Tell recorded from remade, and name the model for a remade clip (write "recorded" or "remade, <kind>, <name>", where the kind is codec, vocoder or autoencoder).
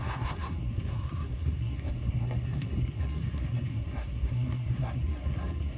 remade, codec, SNAC